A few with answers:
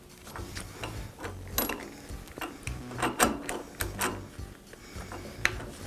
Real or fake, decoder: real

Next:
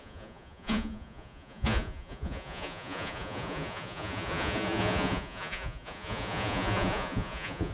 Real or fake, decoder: fake, vocoder, Vocos